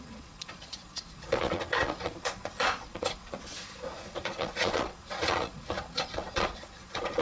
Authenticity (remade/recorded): remade